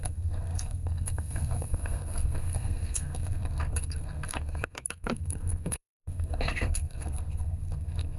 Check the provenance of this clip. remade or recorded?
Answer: remade